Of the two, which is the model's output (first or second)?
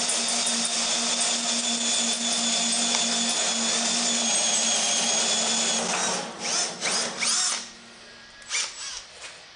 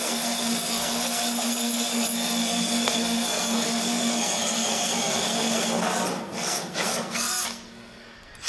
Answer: second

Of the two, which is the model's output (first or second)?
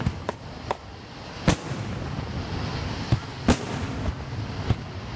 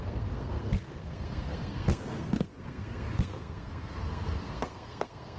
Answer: second